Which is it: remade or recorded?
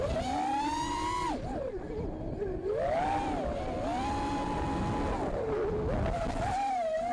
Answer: recorded